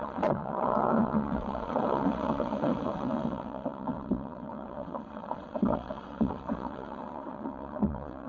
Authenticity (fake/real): fake